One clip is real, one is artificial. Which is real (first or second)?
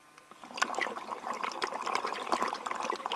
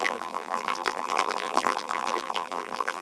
first